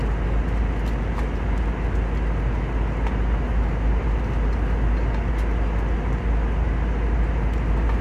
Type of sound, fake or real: real